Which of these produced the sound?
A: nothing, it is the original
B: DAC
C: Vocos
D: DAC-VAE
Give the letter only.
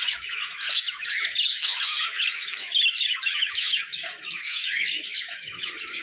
D